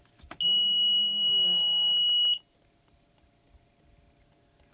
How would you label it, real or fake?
real